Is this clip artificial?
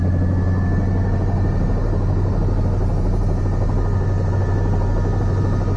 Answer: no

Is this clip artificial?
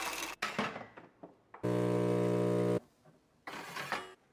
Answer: no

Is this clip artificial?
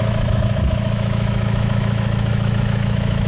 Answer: yes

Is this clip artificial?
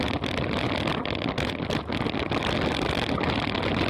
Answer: no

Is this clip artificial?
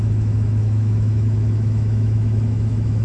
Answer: yes